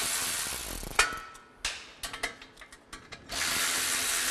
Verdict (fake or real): real